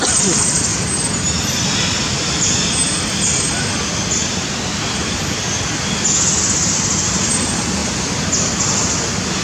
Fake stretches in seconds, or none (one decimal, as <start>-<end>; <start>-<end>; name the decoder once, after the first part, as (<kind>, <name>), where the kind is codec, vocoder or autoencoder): none